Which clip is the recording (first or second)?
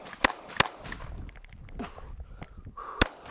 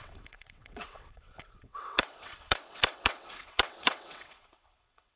first